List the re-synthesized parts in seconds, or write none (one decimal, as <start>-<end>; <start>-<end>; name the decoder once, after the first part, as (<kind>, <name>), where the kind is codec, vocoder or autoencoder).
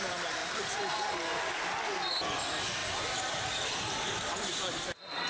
0.4-1.6 (vocoder, BigVGAN v2)